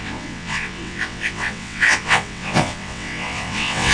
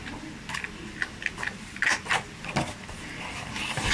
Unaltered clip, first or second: second